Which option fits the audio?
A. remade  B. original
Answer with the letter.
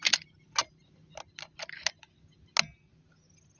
B